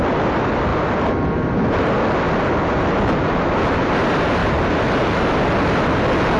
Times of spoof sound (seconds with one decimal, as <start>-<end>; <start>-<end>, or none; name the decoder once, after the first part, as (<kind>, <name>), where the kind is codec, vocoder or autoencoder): none